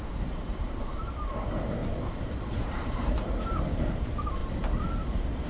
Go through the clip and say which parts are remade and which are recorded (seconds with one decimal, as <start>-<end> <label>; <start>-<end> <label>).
0.0-4.4 remade; 4.4-5.5 recorded